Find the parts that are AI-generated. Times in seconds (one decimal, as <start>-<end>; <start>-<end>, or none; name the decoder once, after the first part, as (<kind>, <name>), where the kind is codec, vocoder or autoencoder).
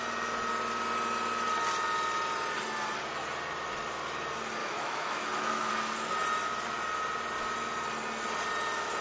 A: 4.6-5.7 (autoencoder, DAC-VAE)